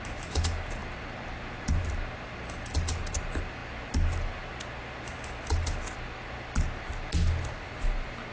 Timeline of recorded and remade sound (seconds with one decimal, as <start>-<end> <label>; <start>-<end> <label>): 0.0-8.3 recorded